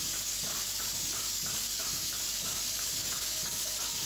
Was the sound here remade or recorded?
remade